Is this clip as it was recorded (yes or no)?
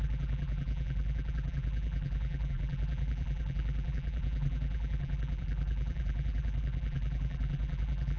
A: no